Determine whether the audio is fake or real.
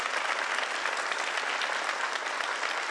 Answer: real